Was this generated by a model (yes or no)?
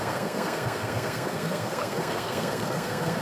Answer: yes